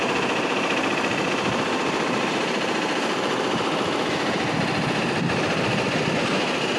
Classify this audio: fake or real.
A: real